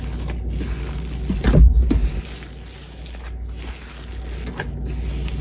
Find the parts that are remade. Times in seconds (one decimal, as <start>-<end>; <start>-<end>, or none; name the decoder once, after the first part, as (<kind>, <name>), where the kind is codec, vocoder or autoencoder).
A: none